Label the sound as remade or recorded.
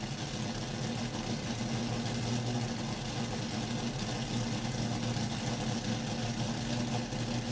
recorded